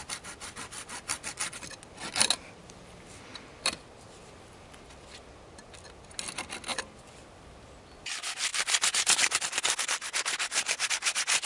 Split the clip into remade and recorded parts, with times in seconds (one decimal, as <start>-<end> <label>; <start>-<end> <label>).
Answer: 0.0-11.5 recorded